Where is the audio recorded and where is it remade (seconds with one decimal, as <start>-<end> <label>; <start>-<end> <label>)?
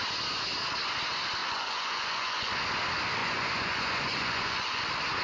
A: 0.0-1.4 recorded; 1.4-2.5 remade; 2.5-3.2 recorded; 3.2-4.8 remade; 4.8-5.2 recorded